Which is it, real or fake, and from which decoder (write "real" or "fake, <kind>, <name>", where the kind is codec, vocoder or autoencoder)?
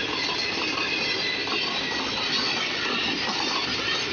real